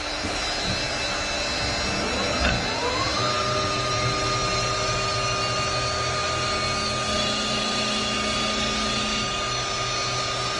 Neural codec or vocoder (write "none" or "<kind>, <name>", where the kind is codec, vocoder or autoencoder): none